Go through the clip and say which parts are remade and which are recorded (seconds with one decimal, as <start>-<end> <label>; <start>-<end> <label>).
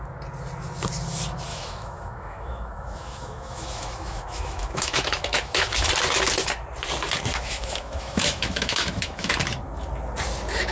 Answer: 0.0-1.5 recorded; 1.5-5.9 remade; 5.9-7.3 recorded; 7.3-9.3 remade; 9.3-10.7 recorded